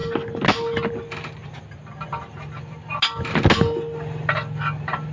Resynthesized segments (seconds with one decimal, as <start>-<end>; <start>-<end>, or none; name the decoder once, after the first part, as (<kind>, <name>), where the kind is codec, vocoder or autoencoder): none